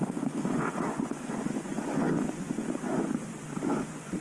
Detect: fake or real fake